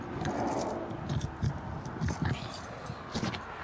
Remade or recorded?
recorded